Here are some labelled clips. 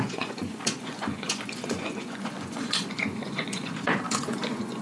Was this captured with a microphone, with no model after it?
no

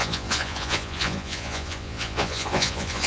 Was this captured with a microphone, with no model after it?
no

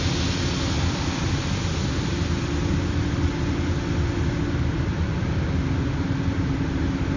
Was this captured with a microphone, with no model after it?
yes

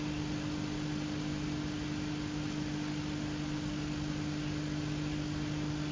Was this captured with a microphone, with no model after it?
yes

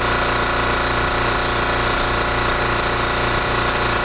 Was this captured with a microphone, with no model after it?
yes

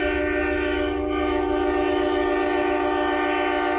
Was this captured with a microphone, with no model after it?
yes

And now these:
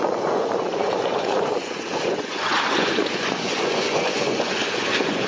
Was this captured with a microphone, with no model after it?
no